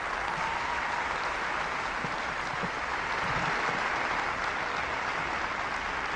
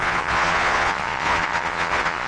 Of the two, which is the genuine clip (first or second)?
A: first